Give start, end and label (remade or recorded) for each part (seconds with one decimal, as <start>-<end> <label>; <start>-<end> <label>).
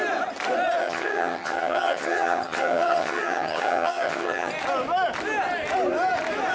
0.0-0.8 recorded; 0.8-4.5 remade; 4.5-6.5 recorded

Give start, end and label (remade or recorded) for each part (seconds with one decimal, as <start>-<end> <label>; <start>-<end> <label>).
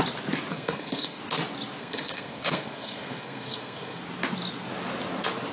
0.0-0.5 recorded; 0.5-1.2 remade; 1.2-1.8 recorded; 1.8-4.0 remade; 4.0-5.5 recorded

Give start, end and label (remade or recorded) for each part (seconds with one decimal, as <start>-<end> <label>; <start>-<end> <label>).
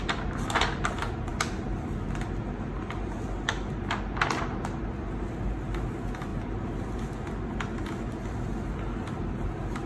0.0-9.9 recorded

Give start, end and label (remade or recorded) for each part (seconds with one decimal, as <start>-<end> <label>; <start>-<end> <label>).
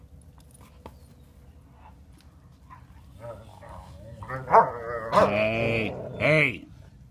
0.0-3.5 recorded; 3.5-4.2 remade; 4.2-7.1 recorded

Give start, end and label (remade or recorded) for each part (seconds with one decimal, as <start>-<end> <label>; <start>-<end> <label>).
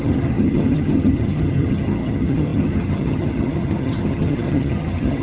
0.0-5.2 remade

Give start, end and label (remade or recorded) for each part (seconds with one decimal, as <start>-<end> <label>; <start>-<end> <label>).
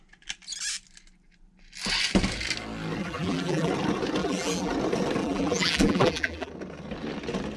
0.0-3.0 recorded; 3.0-3.7 remade; 3.7-4.2 recorded; 4.2-4.7 remade; 4.7-5.2 recorded; 5.2-6.5 remade; 6.5-7.6 recorded